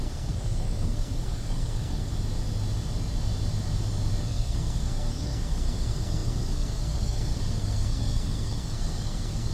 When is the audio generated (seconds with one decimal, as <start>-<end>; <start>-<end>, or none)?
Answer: 0.0-2.1; 4.2-9.5